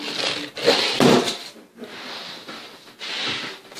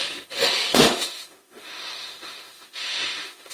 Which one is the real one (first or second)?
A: first